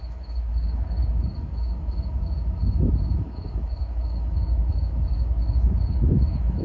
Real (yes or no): no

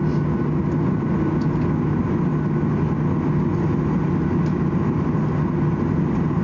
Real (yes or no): yes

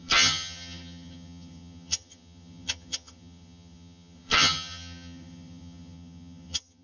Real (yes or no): no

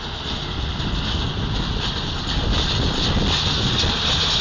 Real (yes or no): yes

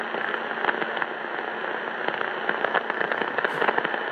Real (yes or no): yes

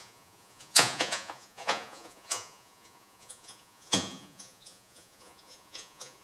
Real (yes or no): no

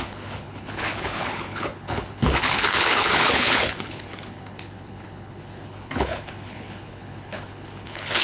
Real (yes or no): no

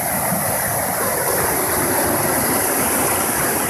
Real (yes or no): yes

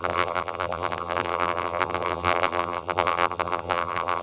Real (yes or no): no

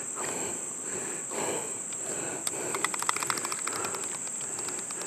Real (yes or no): yes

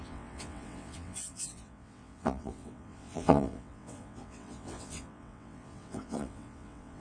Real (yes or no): no